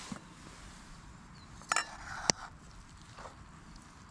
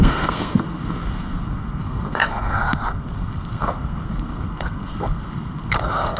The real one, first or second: first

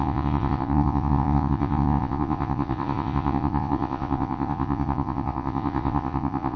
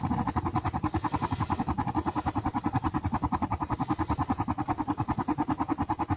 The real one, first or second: second